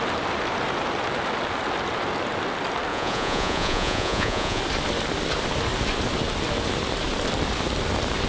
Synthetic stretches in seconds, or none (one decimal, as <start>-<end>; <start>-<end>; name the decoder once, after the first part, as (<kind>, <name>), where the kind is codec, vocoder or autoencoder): 2.9-4.6 (vocoder, Vocos)